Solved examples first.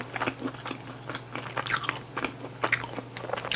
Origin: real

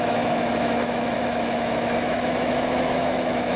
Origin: fake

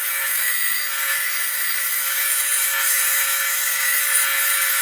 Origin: fake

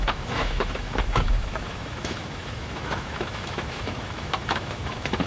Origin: fake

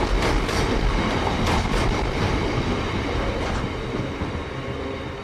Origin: real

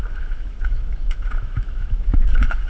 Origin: fake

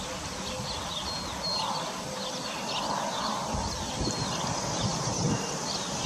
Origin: real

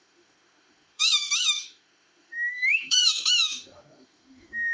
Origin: fake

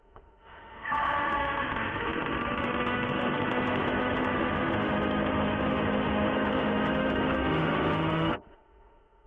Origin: fake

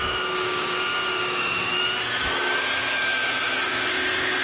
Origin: fake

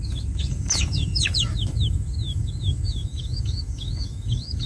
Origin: fake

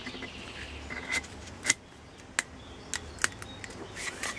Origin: real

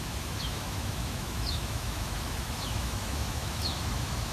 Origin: fake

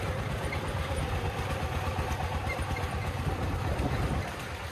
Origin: real